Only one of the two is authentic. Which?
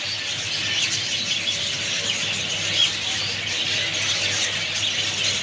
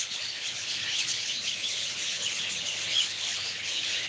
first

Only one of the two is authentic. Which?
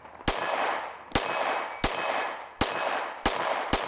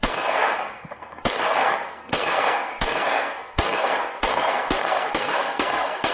first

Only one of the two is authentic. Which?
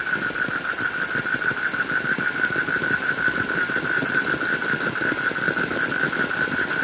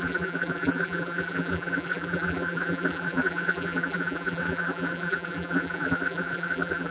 first